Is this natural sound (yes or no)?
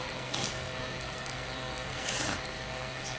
no